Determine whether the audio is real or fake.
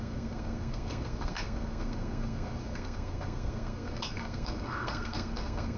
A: fake